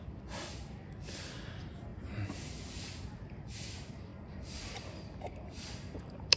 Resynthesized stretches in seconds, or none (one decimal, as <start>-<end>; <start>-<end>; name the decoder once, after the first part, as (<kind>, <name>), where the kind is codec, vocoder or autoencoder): 4.1-6.4 (vocoder, BigVGAN v2)